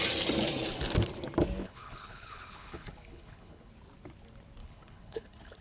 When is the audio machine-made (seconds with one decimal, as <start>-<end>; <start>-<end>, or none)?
1.6-3.7; 4.6-5.6

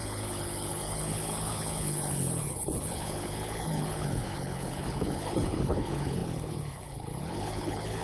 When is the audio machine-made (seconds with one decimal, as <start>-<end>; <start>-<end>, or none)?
0.0-8.0

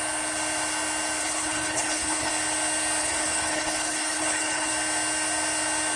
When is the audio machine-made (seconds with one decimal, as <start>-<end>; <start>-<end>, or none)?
1.2-2.3; 3.0-4.7

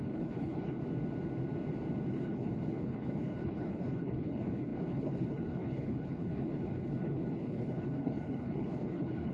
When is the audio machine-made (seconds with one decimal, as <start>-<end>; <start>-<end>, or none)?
0.0-0.8; 2.1-9.3

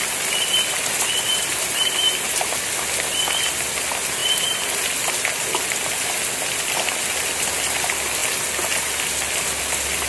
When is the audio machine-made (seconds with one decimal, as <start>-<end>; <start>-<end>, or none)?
none

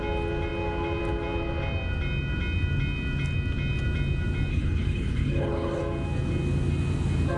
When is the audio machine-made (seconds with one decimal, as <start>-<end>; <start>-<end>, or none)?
4.5-5.8

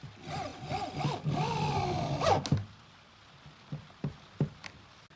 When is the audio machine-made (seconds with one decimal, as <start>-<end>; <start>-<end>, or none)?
none